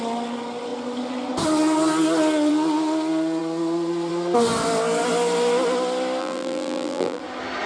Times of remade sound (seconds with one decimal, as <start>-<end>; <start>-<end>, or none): 6.2-7.2